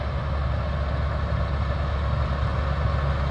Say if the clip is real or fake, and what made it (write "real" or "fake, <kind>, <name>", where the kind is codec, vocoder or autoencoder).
real